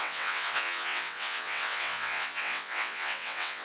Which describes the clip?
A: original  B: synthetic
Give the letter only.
B